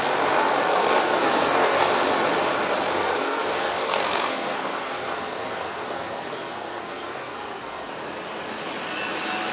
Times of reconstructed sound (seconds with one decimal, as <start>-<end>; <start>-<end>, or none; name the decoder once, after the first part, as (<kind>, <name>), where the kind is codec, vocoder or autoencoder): 0.6-1.9 (codec, SNAC); 3.0-7.9